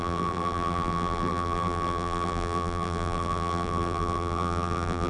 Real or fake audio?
fake